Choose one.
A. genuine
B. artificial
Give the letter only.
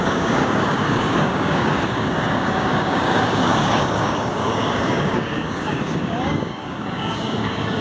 B